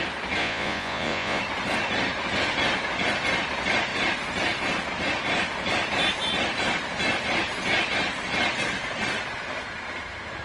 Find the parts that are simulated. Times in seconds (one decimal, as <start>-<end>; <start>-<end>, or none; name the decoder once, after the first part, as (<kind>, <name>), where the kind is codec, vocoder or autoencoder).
0.4-1.4 (vocoder, Vocos)